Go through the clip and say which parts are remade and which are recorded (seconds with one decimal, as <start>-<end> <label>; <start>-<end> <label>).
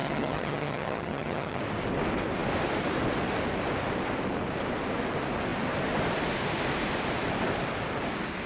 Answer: 0.0-1.6 remade; 1.6-8.5 recorded